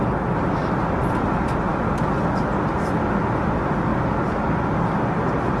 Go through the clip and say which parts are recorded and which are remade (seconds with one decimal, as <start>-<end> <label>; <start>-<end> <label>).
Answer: 0.0-5.6 recorded